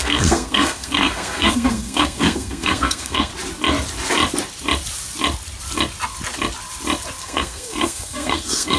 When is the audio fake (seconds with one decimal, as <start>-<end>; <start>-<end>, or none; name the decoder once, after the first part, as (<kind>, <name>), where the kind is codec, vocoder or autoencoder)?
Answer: 0.0-3.3 (codec, SNAC); 7.2-8.8